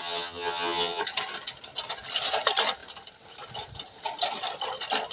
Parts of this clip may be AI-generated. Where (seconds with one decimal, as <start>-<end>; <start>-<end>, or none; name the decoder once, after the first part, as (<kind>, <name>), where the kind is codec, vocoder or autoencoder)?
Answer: 0.0-1.0 (vocoder, HiFi-GAN)